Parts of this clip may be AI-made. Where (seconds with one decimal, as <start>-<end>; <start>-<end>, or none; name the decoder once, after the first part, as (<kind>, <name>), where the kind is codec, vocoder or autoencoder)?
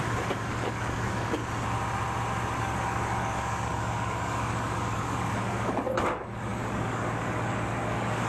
0.0-1.4 (codec, DAC); 2.6-8.3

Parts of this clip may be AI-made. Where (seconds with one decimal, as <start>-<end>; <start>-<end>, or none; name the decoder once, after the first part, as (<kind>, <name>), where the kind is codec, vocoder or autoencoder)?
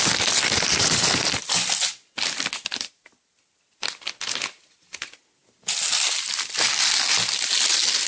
1.4-2.1 (vocoder, BigVGAN v2)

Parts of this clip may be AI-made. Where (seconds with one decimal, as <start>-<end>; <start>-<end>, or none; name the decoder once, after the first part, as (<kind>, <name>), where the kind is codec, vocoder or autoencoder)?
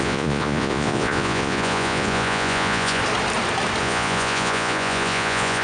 0.0-3.0 (vocoder, Vocos); 3.8-5.6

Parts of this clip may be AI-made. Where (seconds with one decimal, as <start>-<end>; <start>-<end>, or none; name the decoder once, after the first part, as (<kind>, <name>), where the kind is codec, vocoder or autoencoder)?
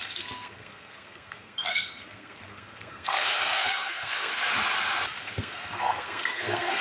0.0-4.3 (codec, SNAC); 5.2-6.8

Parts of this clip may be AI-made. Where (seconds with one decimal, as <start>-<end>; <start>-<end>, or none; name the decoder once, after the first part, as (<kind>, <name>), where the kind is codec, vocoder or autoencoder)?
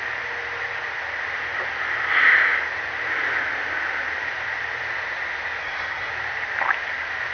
5.6-6.1 (codec, SNAC)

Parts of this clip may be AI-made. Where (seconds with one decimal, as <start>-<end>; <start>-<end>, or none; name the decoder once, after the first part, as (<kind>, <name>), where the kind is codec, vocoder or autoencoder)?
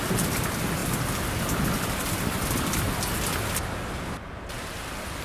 none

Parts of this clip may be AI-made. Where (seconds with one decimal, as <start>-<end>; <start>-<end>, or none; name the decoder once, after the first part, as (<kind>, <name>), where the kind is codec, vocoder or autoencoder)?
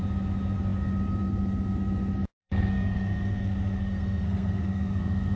2.4-5.4 (codec, SNAC)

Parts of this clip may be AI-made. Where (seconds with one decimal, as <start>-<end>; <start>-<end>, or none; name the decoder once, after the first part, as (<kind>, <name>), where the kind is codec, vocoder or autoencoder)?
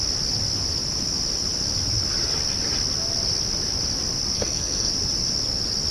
4.3-4.9 (codec, SNAC)